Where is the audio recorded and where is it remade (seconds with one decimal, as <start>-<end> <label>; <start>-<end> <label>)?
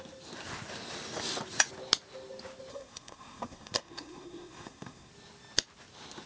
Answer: 0.0-2.7 recorded; 2.7-5.1 remade; 5.1-6.3 recorded